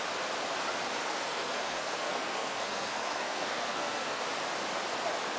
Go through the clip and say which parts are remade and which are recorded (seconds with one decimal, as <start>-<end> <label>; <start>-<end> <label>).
0.0-1.0 recorded; 1.0-4.2 remade; 4.2-5.4 recorded